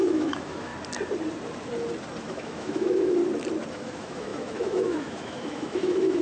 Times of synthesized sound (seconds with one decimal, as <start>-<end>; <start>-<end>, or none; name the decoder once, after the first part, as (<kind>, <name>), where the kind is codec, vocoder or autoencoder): 0.0-0.7 (autoencoder, DAC-VAE); 2.2-3.2; 3.7-6.2